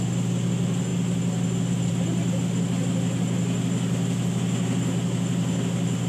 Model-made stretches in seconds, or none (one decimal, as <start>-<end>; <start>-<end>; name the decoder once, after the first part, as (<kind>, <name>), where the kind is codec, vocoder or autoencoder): none